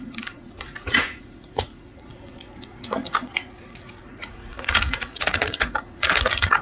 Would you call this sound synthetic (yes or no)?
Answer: yes